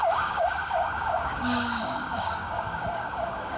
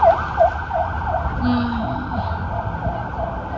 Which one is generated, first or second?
first